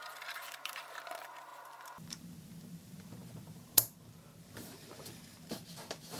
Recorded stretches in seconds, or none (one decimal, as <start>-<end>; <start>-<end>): none